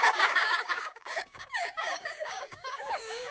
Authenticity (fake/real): fake